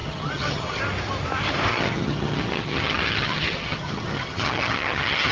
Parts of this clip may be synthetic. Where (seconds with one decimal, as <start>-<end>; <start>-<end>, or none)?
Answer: 0.0-0.8; 1.7-5.3